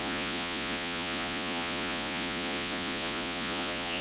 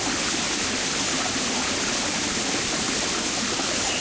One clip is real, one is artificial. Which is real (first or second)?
second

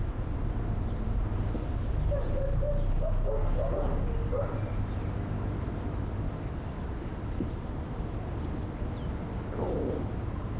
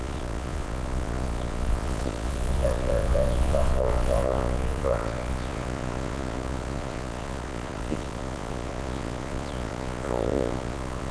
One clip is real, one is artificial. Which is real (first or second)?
first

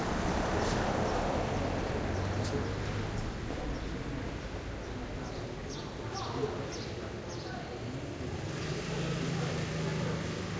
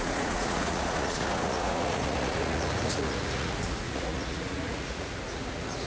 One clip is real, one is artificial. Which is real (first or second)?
first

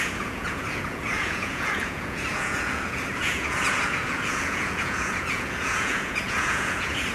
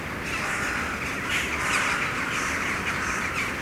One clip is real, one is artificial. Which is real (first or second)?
second